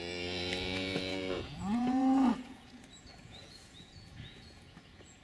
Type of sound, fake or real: fake